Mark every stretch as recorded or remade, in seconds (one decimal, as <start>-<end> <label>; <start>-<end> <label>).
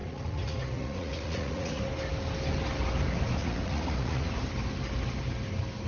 0.0-1.8 remade; 1.8-3.4 recorded; 3.4-4.3 remade; 4.3-5.9 recorded